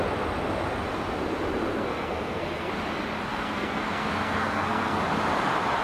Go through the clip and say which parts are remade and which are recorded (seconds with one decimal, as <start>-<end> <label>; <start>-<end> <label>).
0.0-1.7 recorded; 1.7-2.7 remade; 2.7-3.3 recorded; 3.3-5.0 remade; 5.0-5.8 recorded